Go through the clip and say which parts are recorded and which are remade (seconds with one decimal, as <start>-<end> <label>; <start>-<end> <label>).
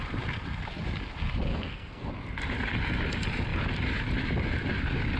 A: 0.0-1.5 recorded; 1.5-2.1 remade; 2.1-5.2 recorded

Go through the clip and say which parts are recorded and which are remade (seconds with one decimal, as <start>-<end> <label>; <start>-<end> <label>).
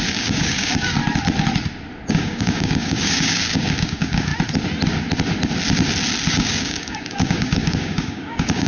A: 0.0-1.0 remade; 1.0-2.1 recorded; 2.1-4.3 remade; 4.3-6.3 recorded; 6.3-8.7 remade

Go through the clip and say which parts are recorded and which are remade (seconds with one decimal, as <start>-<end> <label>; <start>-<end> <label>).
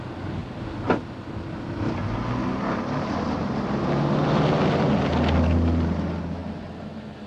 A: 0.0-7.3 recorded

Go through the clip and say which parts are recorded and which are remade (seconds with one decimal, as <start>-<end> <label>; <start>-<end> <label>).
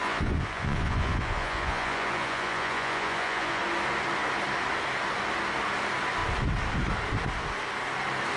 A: 0.0-3.6 remade; 3.6-8.4 recorded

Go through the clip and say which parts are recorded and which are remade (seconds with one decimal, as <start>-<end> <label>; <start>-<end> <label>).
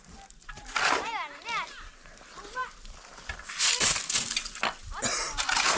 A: 0.0-5.8 recorded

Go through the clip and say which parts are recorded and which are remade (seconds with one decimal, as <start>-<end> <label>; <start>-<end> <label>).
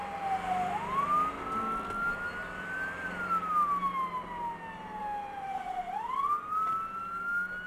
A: 0.0-7.7 recorded